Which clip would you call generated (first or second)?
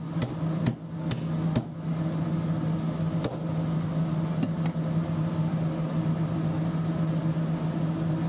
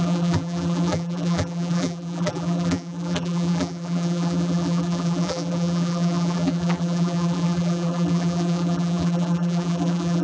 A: second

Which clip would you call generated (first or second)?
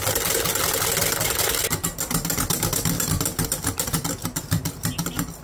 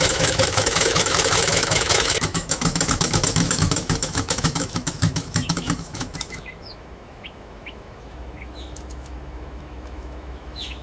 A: second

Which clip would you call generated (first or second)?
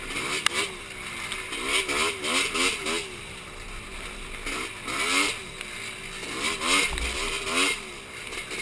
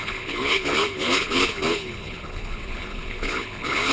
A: second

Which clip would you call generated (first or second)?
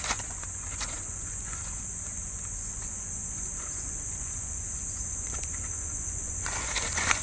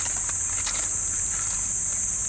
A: first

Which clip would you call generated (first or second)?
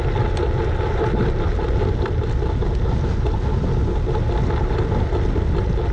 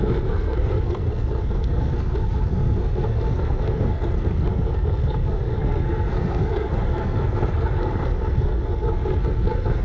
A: second